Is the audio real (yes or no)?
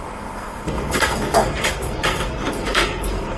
no